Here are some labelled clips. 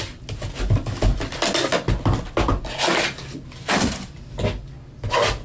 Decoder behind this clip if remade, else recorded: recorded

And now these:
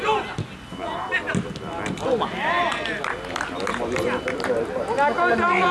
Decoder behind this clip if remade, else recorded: recorded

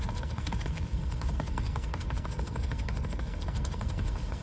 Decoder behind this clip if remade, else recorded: remade, codec, SNAC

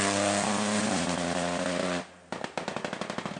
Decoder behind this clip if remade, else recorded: recorded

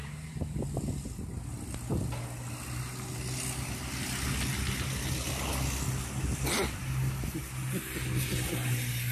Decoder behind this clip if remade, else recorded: recorded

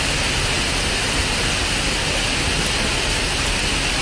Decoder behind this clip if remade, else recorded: recorded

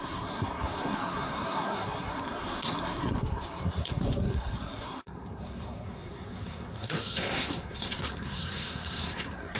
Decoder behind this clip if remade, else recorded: remade, codec, SNAC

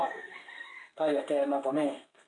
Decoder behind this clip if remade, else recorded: remade, codec, SNAC